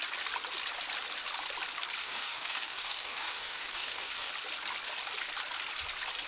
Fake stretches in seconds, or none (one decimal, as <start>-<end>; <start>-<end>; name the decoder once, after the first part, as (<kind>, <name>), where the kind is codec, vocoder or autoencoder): 2.0-4.3 (codec, DAC)